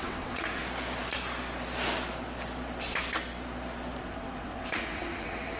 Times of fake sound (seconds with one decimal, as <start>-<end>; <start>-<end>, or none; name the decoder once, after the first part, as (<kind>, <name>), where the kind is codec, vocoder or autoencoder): 0.0-0.6 (vocoder, WaveNeXt); 4.0-5.6